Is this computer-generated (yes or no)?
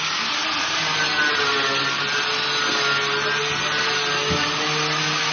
no